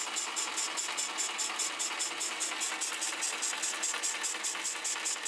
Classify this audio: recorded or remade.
recorded